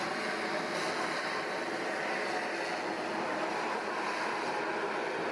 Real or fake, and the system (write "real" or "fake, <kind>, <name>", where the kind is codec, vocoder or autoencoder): real